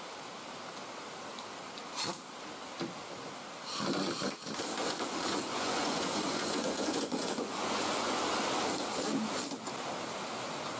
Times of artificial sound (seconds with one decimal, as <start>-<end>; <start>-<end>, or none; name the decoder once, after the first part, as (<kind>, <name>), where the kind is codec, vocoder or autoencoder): 4.8-8.2 (vocoder, Vocos)